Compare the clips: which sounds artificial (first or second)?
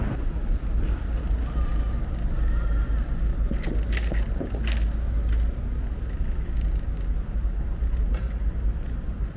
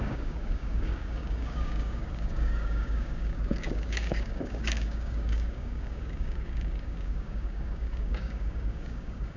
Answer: second